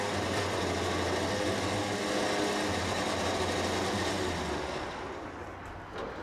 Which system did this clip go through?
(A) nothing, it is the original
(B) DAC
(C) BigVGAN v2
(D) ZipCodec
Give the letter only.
A